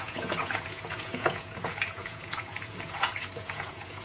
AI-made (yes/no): yes